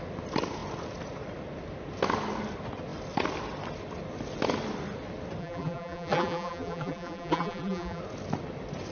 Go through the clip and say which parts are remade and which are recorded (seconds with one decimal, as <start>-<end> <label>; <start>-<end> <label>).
0.0-5.4 recorded; 5.4-8.0 remade; 8.0-8.9 recorded